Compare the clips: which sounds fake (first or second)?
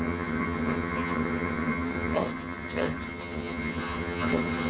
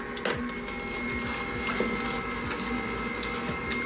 first